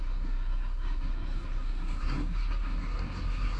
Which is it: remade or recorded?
remade